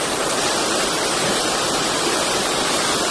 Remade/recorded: recorded